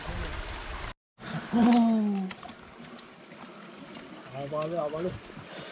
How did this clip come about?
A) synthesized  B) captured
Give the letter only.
B